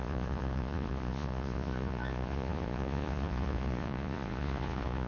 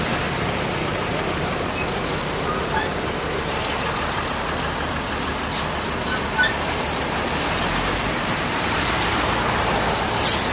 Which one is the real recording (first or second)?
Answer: second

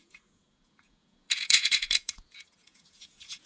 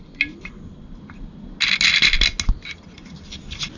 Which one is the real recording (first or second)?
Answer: second